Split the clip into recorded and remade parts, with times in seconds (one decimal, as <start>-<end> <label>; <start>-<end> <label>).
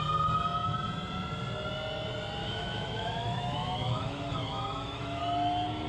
0.0-2.4 recorded; 2.4-5.2 remade; 5.2-5.9 recorded